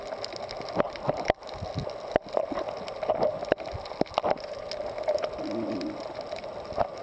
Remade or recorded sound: recorded